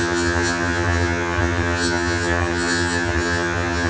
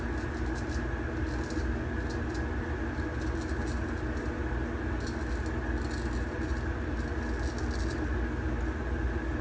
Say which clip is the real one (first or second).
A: second